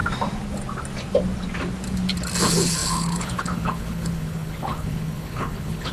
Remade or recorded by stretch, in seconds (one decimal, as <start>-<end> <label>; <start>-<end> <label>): 0.0-2.4 recorded; 2.4-5.9 remade